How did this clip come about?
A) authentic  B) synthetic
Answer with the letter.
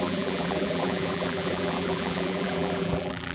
B